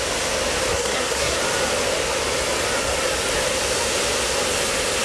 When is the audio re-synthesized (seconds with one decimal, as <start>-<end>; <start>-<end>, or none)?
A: 0.7-1.4